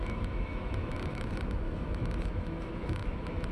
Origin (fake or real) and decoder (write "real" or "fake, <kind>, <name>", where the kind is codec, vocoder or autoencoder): fake, autoencoder, DAC-VAE